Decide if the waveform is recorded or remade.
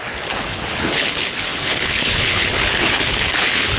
remade